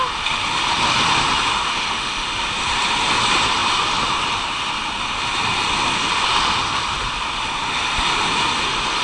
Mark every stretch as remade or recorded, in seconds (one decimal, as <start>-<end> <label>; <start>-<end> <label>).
0.0-1.5 recorded; 1.5-2.5 remade; 2.5-9.0 recorded